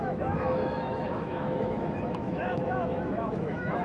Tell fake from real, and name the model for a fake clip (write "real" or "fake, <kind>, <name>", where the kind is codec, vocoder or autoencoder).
fake, autoencoder, DAC-VAE